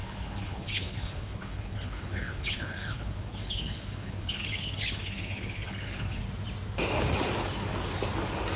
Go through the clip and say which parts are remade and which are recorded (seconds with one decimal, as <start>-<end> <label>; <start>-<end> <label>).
0.0-6.2 remade; 6.2-8.6 recorded